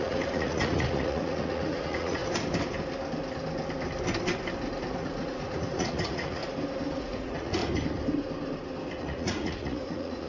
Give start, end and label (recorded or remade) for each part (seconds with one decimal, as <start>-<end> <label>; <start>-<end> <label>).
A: 0.0-2.2 remade; 2.2-4.8 recorded; 4.8-6.4 remade; 6.4-7.0 recorded; 7.0-7.6 remade; 7.6-9.0 recorded; 9.0-10.3 remade